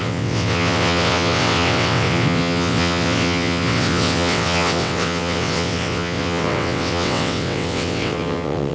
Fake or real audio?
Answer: fake